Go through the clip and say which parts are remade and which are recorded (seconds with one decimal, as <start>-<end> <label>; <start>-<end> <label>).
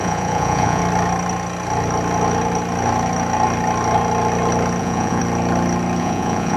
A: 0.0-0.8 remade; 0.8-4.8 recorded; 4.8-5.2 remade; 5.2-6.0 recorded; 6.0-6.6 remade